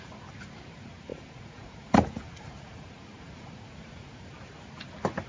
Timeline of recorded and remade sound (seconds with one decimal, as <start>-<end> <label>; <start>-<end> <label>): 0.0-1.1 recorded; 1.1-4.3 remade; 4.3-5.3 recorded